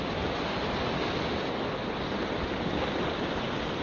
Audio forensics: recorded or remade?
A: recorded